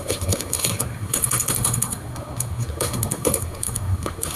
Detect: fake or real fake